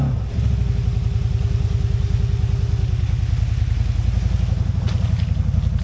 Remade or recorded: recorded